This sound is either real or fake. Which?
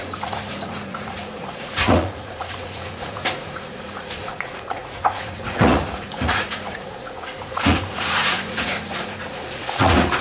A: fake